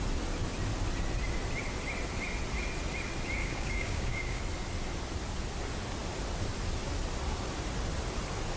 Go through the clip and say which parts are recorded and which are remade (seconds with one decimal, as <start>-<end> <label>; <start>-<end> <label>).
0.0-3.4 recorded; 3.4-4.4 remade; 4.4-8.6 recorded